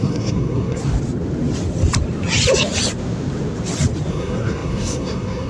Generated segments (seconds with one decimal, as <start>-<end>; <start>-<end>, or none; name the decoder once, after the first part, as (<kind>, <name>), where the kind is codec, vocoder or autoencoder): 0.0-0.8 (codec, SNAC); 4.1-5.5